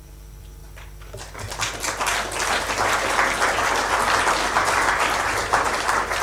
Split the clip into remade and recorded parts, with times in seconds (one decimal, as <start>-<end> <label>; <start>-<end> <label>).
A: 0.0-0.6 remade; 0.6-4.3 recorded; 4.3-6.2 remade